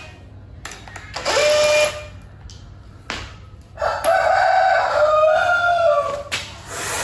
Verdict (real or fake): real